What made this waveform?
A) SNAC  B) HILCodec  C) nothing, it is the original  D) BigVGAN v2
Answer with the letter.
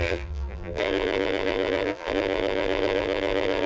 D